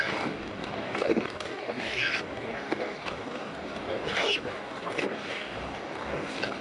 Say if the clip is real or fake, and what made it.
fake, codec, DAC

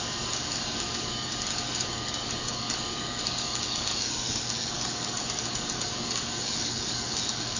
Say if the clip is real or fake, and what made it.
fake, codec, DAC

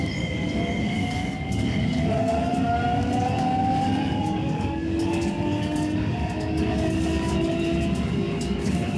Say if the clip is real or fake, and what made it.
fake, codec, DAC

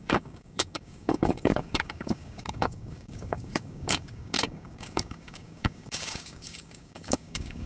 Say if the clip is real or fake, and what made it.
fake, codec, DAC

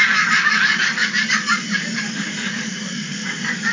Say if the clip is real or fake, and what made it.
fake, codec, DAC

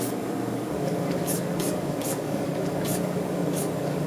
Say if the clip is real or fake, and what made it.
fake, codec, DAC